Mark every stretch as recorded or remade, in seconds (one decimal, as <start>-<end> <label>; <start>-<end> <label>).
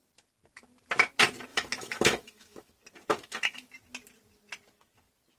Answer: 0.0-1.5 recorded; 1.5-2.7 remade; 2.7-3.1 recorded; 3.1-3.7 remade; 3.7-5.4 recorded